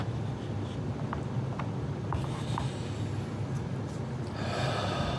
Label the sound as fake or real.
real